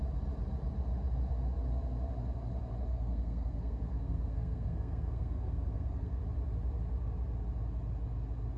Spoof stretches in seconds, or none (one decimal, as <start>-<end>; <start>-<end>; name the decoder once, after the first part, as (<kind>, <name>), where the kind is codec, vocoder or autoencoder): 2.9-6.2 (codec, SNAC)